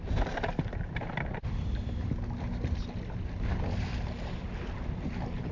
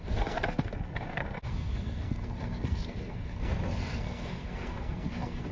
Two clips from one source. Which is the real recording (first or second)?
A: first